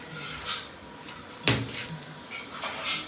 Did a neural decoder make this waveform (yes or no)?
no